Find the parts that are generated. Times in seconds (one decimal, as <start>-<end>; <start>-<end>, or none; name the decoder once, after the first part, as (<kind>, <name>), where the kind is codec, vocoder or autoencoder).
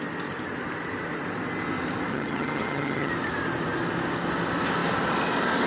2.1-3.1 (vocoder, HiFi-GAN)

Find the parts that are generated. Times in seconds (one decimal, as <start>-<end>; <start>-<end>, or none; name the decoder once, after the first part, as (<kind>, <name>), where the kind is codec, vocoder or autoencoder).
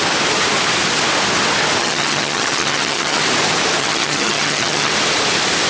1.8-3.2 (vocoder, HiFi-GAN); 3.8-4.9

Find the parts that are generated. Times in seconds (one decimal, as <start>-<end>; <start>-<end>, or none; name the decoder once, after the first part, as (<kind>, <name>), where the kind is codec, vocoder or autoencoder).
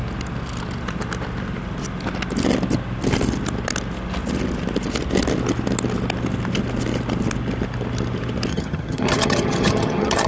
8.5-10.3 (vocoder, HiFi-GAN)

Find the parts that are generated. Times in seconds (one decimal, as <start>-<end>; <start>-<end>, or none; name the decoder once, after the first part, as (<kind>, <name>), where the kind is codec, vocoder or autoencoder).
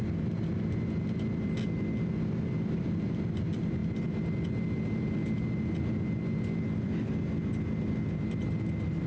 none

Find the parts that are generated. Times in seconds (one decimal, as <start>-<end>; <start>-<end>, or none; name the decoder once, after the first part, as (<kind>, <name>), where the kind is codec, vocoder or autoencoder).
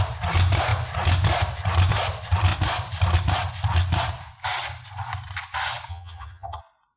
5.9-6.6 (vocoder, HiFi-GAN)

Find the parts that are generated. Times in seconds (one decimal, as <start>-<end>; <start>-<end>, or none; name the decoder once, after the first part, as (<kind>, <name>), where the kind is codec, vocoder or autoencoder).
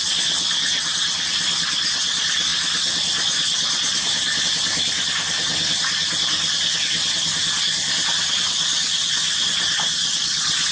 none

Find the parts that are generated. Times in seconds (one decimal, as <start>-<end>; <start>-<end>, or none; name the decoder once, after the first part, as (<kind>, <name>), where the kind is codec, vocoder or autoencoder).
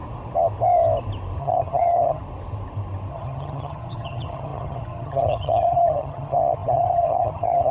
1.4-2.2 (vocoder, HiFi-GAN); 3.1-7.7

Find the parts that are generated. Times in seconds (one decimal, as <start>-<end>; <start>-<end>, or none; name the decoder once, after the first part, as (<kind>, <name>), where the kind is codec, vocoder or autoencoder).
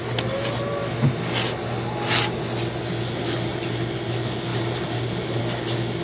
none